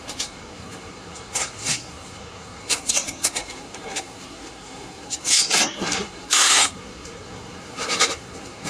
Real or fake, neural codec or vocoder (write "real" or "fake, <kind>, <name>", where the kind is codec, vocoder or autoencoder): fake, codec, SNAC